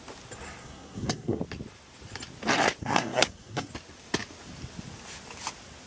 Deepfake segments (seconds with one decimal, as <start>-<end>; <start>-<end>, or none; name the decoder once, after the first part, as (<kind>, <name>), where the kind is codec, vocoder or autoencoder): 0.6-1.4 (codec, SNAC); 2.8-3.7